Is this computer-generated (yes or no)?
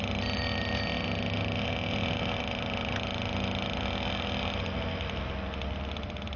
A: no